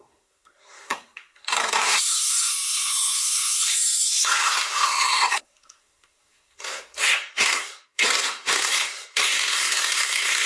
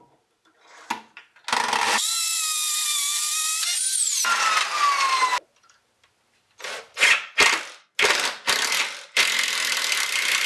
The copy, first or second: first